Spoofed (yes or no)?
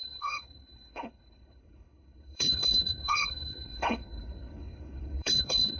yes